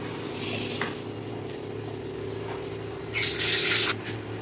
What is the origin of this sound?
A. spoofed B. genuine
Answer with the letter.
B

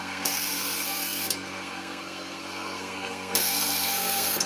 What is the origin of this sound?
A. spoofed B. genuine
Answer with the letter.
A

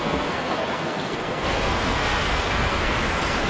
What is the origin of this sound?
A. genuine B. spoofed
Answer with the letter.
B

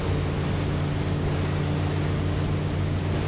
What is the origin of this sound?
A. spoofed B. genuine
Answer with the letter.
B